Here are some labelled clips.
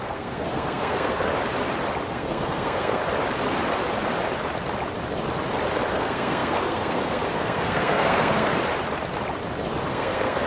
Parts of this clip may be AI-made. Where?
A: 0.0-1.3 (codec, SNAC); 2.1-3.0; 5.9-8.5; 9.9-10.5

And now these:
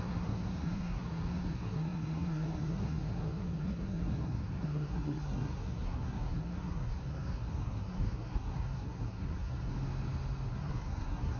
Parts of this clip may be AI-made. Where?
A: 0.0-9.7 (codec, SNAC); 10.5-11.4

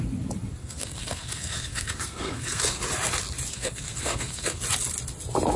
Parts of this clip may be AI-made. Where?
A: 0.6-2.8 (codec, SNAC); 3.5-4.6

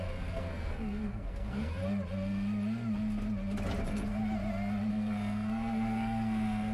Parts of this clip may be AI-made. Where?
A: 0.0-1.8 (codec, SNAC); 3.8-4.2; 4.9-6.7

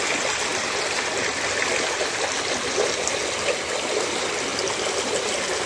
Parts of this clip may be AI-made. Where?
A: none

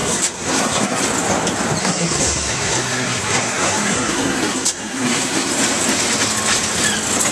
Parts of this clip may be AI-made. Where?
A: 0.0-1.0 (codec, SNAC); 1.8-5.5

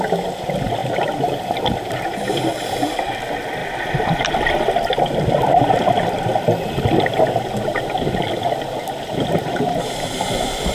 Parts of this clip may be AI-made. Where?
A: none

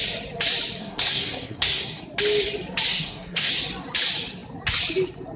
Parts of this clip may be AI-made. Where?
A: 0.8-2.0 (codec, SNAC); 2.9-3.5